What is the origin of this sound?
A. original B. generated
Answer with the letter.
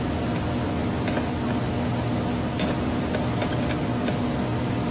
A